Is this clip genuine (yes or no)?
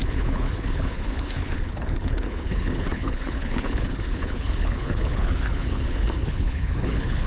no